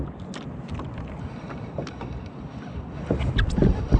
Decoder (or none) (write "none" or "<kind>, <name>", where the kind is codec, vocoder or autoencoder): none